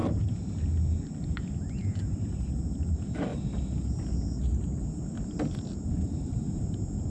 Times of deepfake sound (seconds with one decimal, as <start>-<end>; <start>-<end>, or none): none

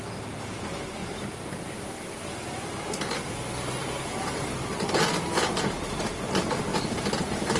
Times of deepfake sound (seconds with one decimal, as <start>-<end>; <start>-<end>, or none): 1.0-4.9; 6.7-7.6

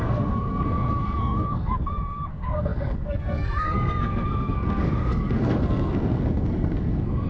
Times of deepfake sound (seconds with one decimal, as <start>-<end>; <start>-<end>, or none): 0.0-7.3

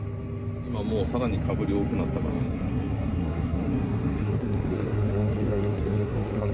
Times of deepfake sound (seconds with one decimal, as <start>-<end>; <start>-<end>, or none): 2.3-6.5

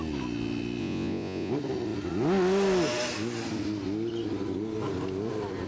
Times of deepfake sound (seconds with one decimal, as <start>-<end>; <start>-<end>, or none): 0.8-1.5

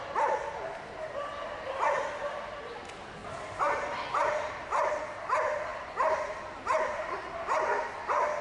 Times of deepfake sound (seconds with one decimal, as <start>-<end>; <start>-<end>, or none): none

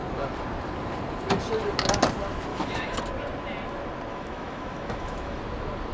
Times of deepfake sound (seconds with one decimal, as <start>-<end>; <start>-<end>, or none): 2.5-3.0; 4.1-5.4